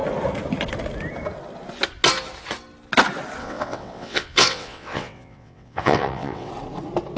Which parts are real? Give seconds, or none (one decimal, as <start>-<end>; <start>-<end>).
0.0-3.4; 6.5-7.2